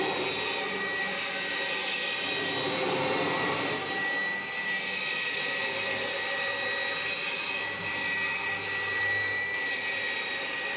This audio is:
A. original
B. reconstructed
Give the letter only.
A